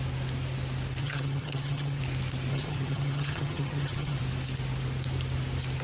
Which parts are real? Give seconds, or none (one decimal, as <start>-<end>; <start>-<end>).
0.0-1.0; 2.0-2.5; 4.2-5.8